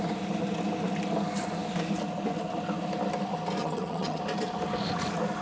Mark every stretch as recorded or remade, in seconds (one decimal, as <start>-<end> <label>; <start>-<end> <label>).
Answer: 0.0-3.6 recorded; 3.6-4.2 remade; 4.2-5.4 recorded